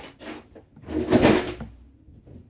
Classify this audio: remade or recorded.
recorded